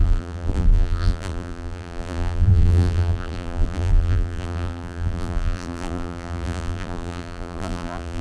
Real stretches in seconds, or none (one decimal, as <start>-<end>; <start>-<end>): none